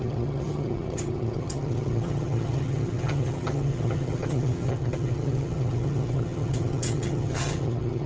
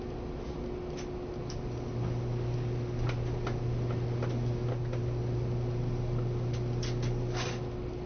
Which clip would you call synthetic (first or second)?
first